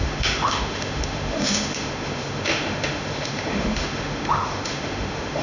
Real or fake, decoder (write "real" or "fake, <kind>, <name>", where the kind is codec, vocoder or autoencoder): fake, autoencoder, DAC-VAE